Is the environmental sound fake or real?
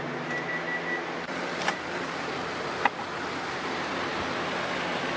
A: real